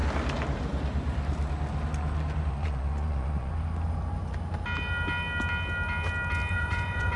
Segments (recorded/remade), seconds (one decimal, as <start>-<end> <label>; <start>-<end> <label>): 0.0-2.5 recorded; 2.5-3.5 remade; 3.5-6.5 recorded; 6.5-7.2 remade